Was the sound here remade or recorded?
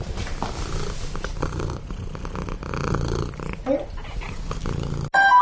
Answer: recorded